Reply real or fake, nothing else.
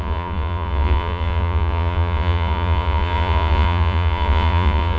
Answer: fake